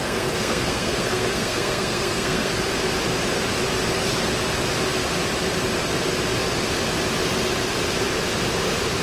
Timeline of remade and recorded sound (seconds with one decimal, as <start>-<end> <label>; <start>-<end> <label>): 0.0-2.5 remade; 2.5-9.0 recorded